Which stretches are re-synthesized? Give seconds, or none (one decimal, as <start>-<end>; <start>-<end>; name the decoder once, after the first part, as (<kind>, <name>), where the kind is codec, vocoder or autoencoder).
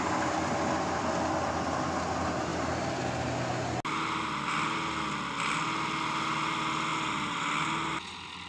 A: none